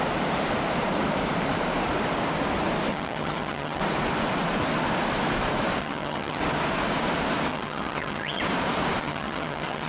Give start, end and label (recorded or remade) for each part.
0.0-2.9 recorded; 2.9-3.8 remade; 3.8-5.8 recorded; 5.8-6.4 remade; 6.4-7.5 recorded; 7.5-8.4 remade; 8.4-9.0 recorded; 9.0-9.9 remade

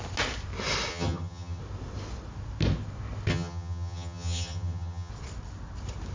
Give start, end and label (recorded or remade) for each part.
0.0-0.9 recorded; 0.9-1.6 remade; 1.6-3.3 recorded; 3.3-5.1 remade; 5.1-6.1 recorded

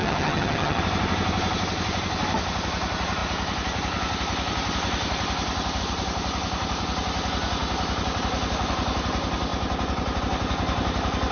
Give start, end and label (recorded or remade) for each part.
0.0-0.8 remade; 0.8-11.3 recorded

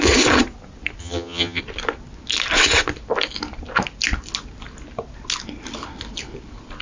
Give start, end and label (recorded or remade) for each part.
0.0-1.0 recorded; 1.0-1.6 remade; 1.6-6.8 recorded

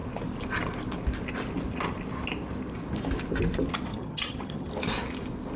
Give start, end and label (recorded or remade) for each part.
0.0-3.9 recorded; 3.9-4.7 remade; 4.7-5.6 recorded

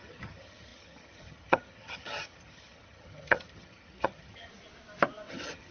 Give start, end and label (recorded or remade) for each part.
0.0-4.5 remade; 4.5-5.3 recorded; 5.3-5.7 remade

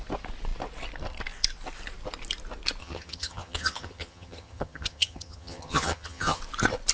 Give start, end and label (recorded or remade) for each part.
0.0-2.8 recorded; 2.8-6.4 remade; 6.4-6.9 recorded